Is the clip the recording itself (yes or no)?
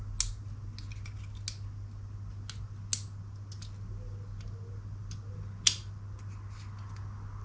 yes